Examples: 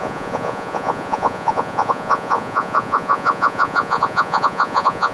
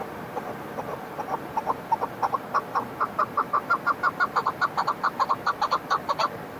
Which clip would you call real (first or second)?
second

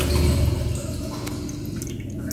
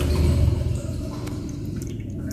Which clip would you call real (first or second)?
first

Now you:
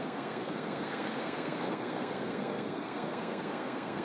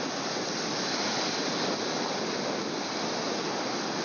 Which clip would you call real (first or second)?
second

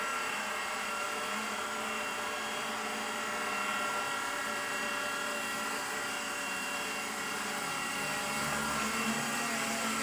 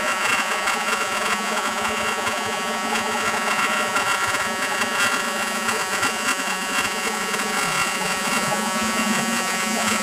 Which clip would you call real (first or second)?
first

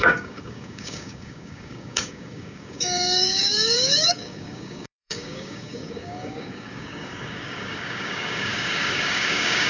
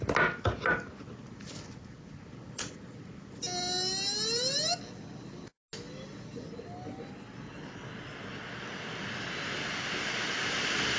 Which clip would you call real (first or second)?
second